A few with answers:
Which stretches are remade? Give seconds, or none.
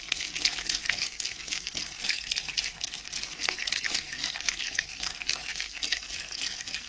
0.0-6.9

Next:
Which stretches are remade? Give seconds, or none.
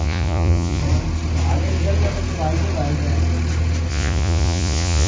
0.0-0.8; 3.9-5.1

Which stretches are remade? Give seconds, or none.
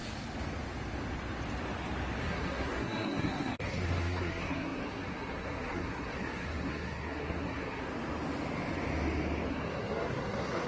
2.2-7.9; 9.5-10.7